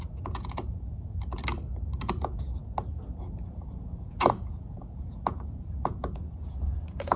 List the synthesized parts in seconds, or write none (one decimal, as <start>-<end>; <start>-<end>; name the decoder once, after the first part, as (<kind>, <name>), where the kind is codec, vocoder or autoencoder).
0.0-1.4 (vocoder, Vocos); 2.1-2.6; 3.5-7.2